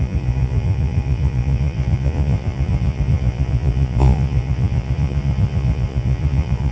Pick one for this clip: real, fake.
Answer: fake